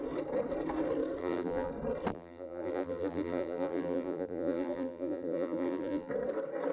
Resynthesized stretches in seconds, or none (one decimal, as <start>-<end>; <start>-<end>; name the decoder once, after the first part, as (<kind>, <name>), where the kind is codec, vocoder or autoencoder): 1.2-1.7 (vocoder, BigVGAN v2); 2.1-6.1